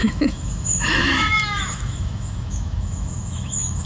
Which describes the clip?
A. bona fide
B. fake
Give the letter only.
B